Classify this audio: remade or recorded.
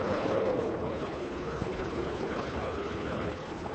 remade